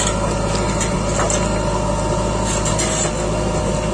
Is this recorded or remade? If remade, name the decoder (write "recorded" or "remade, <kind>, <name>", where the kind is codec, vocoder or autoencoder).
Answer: recorded